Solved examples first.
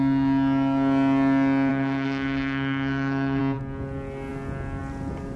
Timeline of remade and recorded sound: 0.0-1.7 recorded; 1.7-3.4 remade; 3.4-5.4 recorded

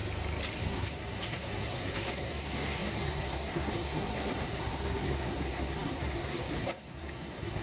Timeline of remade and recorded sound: 0.0-0.6 recorded; 0.6-7.6 remade

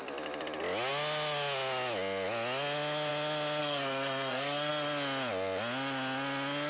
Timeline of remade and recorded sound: 0.0-3.6 recorded; 3.6-4.7 remade; 4.7-6.7 recorded

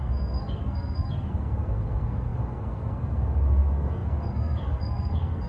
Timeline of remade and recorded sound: 0.0-5.5 remade

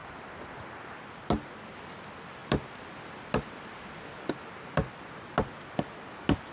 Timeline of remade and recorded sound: 0.0-6.5 recorded